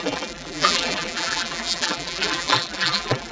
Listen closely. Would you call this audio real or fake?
fake